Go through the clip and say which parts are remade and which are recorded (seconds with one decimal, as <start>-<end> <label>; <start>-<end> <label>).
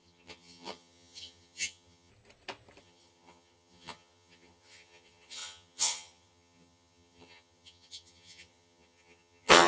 0.0-2.1 remade; 2.1-2.8 recorded; 2.8-9.7 remade